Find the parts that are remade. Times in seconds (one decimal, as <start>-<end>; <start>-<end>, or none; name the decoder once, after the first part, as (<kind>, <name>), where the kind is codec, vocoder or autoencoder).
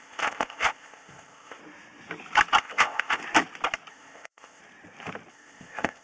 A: 0.0-1.6 (codec, ZipCodec); 2.6-3.2; 3.9-4.6; 5.3-6.0